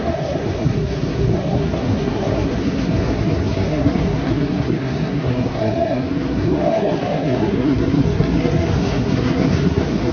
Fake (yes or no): yes